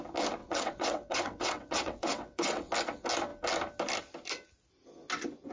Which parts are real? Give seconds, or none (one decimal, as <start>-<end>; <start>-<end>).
0.0-0.4; 2.7-5.5